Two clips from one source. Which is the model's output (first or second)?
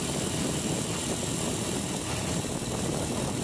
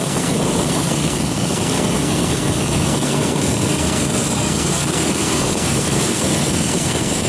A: second